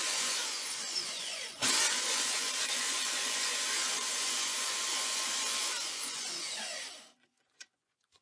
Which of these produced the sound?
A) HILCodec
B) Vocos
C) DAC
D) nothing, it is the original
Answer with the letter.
B